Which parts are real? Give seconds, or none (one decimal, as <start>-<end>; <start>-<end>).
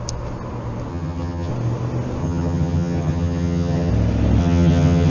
0.0-0.9; 1.5-2.2; 3.9-4.4